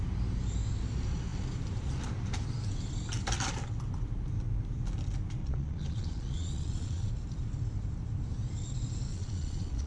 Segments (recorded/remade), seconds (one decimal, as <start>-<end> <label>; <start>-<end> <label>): 0.0-5.4 recorded; 5.4-7.1 remade; 7.1-9.1 recorded; 9.1-9.9 remade